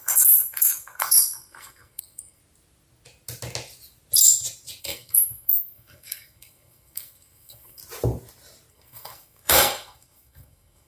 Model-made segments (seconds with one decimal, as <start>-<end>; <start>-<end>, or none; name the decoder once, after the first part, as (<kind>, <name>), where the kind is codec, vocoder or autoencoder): 0.0-2.4 (codec, SNAC); 4.8-7.8; 8.7-10.9